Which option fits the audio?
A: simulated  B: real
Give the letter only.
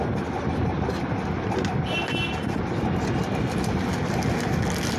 B